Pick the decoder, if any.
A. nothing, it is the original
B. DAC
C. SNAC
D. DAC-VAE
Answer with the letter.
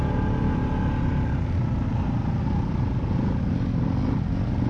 A